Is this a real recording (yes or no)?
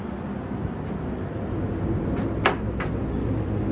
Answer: yes